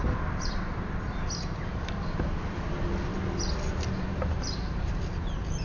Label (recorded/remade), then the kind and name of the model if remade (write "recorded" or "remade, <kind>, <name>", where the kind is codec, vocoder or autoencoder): recorded